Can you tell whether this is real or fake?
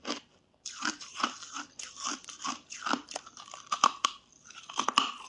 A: fake